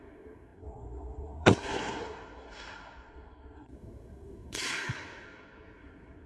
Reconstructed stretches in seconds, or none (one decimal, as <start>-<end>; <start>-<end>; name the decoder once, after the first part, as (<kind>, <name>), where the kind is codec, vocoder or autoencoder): 0.0-6.3 (codec, SNAC)